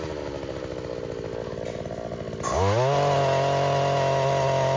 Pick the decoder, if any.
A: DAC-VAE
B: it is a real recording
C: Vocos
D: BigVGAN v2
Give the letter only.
B